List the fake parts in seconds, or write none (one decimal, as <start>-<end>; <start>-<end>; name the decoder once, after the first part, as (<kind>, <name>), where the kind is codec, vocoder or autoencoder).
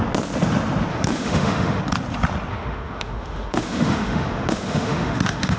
0.9-1.8 (autoencoder, DAC-VAE); 2.5-5.6